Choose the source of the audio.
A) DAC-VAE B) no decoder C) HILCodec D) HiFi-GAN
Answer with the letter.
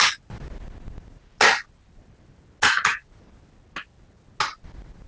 B